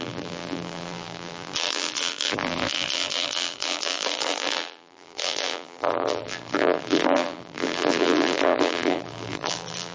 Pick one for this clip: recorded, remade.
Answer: remade